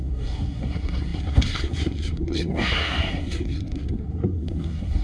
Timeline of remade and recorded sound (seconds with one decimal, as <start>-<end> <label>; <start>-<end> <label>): 0.0-5.0 remade